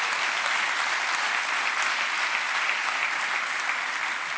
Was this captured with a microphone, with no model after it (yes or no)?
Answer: yes